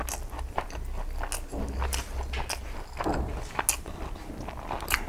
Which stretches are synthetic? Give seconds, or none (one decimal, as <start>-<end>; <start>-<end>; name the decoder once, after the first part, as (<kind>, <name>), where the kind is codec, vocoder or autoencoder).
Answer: none